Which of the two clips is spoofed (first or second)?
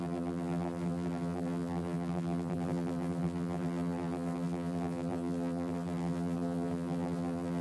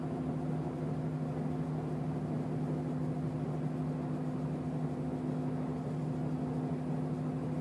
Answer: first